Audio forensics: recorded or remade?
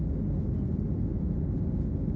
recorded